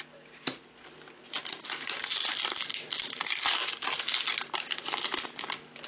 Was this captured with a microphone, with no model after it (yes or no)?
yes